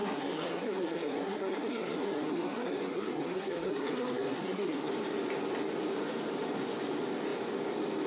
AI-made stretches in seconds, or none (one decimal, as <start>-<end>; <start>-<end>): 0.0-4.9